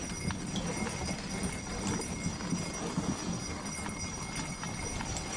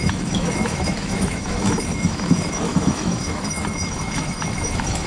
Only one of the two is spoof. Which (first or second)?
second